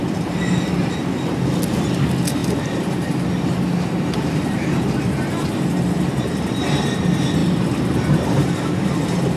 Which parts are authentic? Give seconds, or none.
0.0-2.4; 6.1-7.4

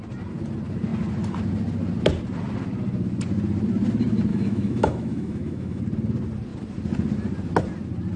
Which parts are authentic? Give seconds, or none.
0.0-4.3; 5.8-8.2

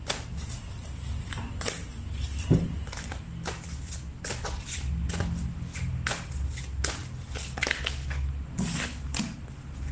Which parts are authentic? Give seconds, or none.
0.0-9.9

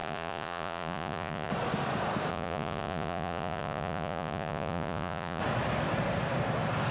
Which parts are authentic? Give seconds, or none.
1.5-2.3; 5.4-6.9